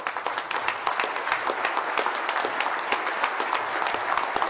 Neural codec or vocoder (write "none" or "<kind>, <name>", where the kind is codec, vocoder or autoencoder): none